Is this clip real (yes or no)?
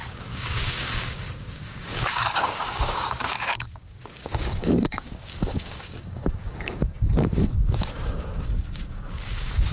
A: no